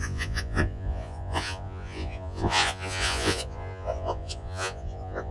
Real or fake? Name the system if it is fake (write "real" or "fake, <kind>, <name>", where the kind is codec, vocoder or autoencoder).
fake, vocoder, Vocos